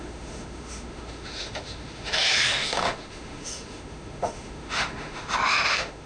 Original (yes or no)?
no